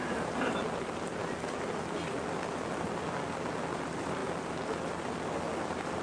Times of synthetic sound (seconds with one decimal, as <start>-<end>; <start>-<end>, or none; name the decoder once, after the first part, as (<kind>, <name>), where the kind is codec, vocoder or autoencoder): 0.0-0.6 (vocoder, BigVGAN v2)